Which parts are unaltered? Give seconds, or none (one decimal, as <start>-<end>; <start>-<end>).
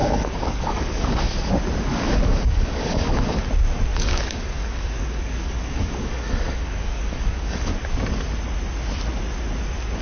1.3-1.9; 3.4-3.9; 7.7-10.0